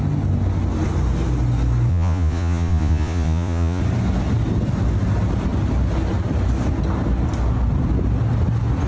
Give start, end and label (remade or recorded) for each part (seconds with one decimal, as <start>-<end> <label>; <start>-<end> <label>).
0.0-1.9 recorded; 1.9-3.8 remade; 3.8-8.9 recorded